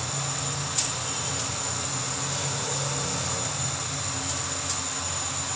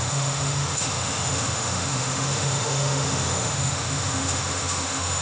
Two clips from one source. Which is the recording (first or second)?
first